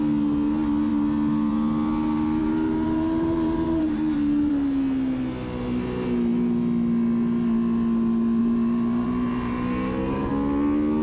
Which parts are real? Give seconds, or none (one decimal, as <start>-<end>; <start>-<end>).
0.0-2.4; 4.5-8.4; 10.3-11.0